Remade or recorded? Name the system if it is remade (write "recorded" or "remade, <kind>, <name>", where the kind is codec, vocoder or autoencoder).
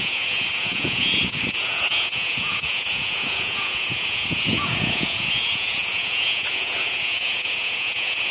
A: remade, vocoder, Vocos